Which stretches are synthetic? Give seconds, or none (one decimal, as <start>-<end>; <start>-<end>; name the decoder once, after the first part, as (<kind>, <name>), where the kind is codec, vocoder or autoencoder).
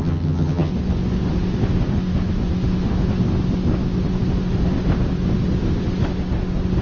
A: 0.0-0.7 (vocoder, HiFi-GAN)